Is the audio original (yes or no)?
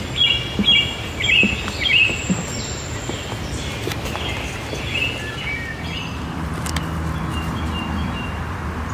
yes